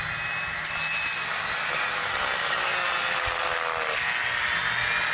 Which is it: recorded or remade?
recorded